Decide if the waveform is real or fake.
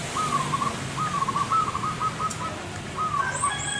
real